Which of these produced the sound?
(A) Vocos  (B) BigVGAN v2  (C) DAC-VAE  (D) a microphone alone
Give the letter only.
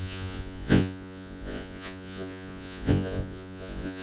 A